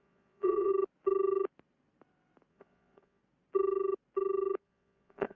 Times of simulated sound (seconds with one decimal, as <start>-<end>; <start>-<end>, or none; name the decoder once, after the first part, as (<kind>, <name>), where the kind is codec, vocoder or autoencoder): 0.0-0.7 (vocoder, Vocos); 2.5-3.2; 4.6-5.3